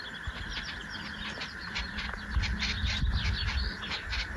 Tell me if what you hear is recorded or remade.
recorded